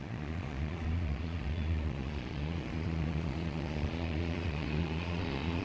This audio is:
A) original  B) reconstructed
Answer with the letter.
B